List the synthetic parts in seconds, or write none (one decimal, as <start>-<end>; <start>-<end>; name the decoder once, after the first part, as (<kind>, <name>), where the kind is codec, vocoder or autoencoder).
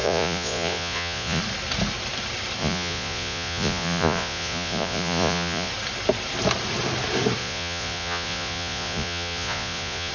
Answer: 0.0-1.4 (vocoder, Vocos); 2.6-5.7; 7.4-10.1